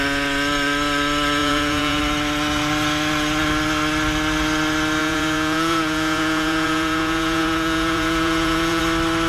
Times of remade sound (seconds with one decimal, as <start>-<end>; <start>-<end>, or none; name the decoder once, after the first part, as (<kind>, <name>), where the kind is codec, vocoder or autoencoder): 1.4-2.0 (vocoder, Vocos); 5.0-8.8